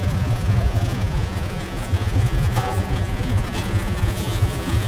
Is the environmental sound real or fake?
fake